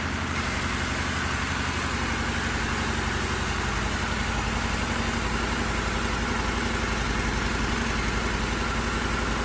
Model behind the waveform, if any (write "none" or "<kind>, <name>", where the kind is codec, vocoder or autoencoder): none